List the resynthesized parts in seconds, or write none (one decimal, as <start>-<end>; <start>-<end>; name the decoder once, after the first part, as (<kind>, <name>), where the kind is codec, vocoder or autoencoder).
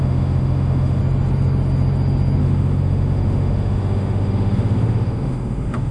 0.0-1.0 (autoencoder, DAC-VAE); 2.4-5.9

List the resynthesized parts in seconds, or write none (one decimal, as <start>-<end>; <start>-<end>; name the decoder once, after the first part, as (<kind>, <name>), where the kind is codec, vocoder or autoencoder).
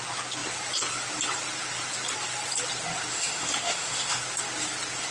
3.1-4.2 (autoencoder, DAC-VAE)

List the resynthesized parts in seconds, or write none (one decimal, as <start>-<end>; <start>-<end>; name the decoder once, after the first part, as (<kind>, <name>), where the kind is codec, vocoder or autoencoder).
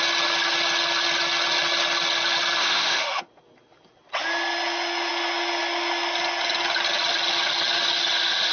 2.6-3.2 (autoencoder, DAC-VAE)